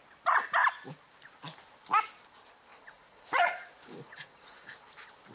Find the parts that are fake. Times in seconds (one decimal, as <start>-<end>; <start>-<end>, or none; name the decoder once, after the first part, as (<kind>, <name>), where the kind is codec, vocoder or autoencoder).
2.7-4.8 (vocoder, Vocos)